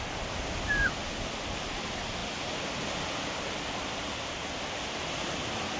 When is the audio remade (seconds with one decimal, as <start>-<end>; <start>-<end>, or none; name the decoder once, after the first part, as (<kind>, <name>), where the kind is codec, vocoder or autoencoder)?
none